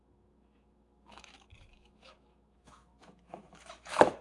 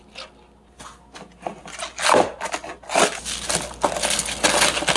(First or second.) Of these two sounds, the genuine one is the second